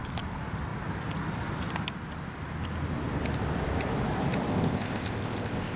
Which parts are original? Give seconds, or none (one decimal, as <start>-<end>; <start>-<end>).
0.0-4.5